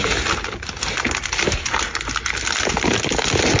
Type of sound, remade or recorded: recorded